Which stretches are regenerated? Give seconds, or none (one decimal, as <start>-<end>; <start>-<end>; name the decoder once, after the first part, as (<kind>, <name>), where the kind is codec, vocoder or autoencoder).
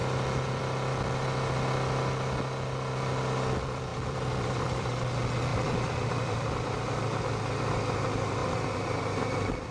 3.9-4.9 (vocoder, BigVGAN v2); 5.5-7.2; 8.4-9.7